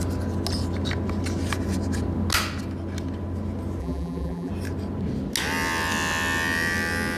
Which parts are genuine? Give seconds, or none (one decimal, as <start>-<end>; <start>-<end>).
0.0-3.8; 4.5-7.2